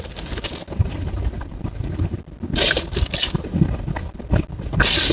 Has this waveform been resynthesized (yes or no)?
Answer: no